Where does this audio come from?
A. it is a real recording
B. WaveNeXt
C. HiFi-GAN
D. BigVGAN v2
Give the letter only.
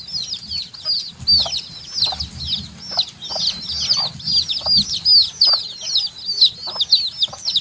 A